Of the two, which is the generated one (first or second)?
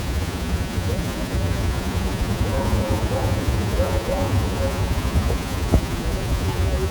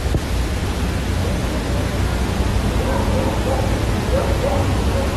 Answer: first